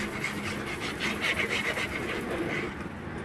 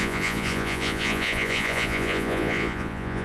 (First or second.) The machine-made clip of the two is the second